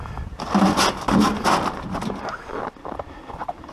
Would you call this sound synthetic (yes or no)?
no